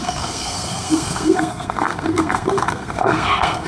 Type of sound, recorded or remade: remade